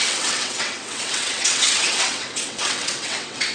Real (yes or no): no